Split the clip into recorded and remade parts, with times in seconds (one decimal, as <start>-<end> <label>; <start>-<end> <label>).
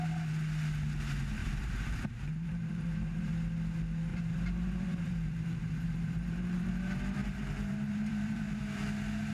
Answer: 0.0-1.4 recorded; 1.4-3.3 remade; 3.3-4.1 recorded; 4.1-6.7 remade; 6.7-7.2 recorded; 7.2-8.6 remade; 8.6-9.3 recorded